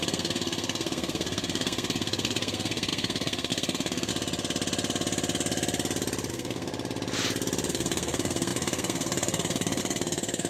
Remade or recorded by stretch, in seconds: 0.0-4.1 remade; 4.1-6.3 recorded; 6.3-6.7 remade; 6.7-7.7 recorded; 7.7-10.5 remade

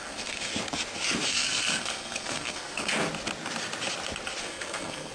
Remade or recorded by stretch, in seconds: 0.0-0.5 remade; 0.5-1.3 recorded; 1.3-2.9 remade; 2.9-4.4 recorded; 4.4-5.1 remade

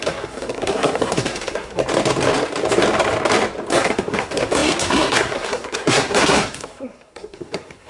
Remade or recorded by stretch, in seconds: 0.0-1.8 remade; 1.8-3.7 recorded; 3.7-7.9 remade

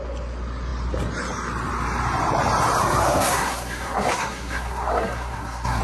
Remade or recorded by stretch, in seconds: 0.0-2.8 recorded; 2.8-5.8 remade

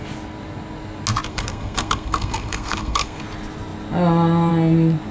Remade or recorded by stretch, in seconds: 0.0-1.3 recorded; 1.3-3.2 remade; 3.2-5.1 recorded

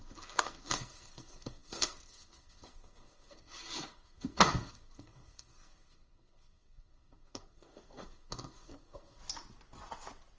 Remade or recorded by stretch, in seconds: 0.0-9.2 remade; 9.2-10.4 recorded

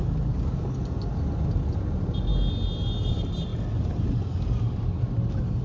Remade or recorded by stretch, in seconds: 0.0-5.6 recorded

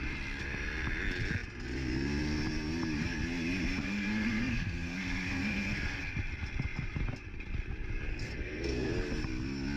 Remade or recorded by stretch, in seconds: 0.0-3.8 recorded; 3.8-6.0 remade; 6.0-8.1 recorded; 8.1-8.9 remade; 8.9-9.8 recorded